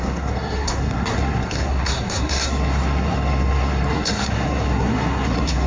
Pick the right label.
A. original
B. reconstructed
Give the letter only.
B